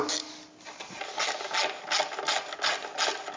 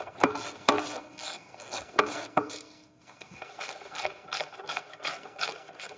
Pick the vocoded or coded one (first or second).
second